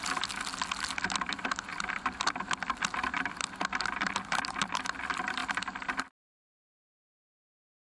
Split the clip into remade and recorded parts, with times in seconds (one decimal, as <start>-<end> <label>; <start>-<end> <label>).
0.0-7.8 recorded